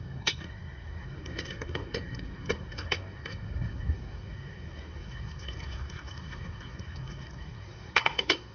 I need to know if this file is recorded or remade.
remade